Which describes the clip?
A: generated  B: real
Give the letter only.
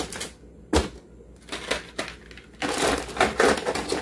B